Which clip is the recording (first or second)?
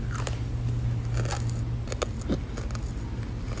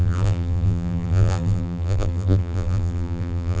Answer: first